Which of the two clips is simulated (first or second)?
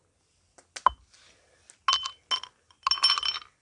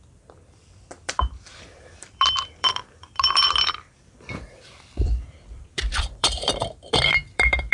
second